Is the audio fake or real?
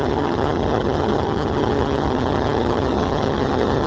fake